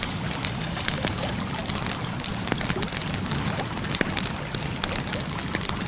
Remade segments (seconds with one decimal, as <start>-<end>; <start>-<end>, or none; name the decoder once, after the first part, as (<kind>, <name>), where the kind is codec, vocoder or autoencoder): none